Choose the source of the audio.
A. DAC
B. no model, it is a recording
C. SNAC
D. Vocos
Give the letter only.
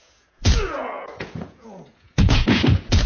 D